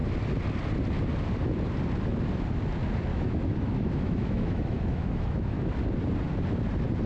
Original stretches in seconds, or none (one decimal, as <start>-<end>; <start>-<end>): 0.0-3.1; 5.7-7.1